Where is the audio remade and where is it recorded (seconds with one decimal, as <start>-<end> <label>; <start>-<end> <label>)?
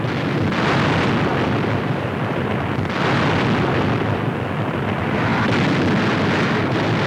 0.0-7.1 recorded